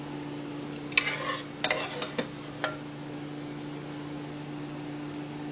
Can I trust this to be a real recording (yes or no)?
yes